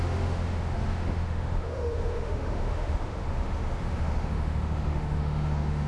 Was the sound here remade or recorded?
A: remade